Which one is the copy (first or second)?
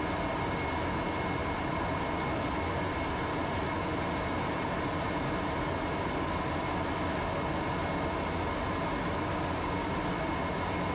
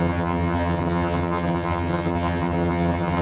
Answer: second